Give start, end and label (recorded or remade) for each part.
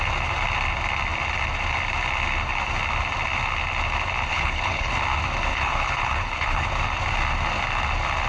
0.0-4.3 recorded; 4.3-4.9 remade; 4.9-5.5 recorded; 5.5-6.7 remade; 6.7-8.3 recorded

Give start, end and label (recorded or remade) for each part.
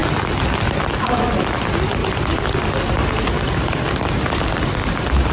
0.0-5.3 recorded